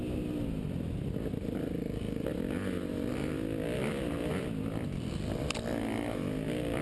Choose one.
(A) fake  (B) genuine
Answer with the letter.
B